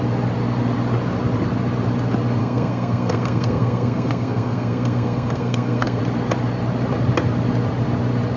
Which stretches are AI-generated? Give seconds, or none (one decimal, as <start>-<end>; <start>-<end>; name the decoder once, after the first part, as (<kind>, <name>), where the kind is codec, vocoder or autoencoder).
2.4-6.0 (codec, SNAC)